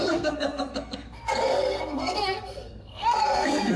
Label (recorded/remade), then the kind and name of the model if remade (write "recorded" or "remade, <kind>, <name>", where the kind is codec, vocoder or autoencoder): remade, codec, SNAC